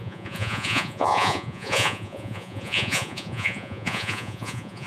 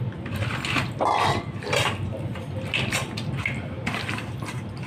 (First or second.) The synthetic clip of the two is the first